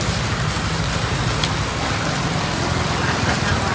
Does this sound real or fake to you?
real